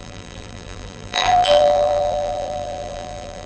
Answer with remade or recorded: remade